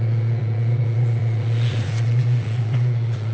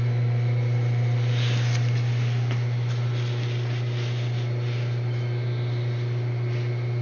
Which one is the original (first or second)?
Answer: second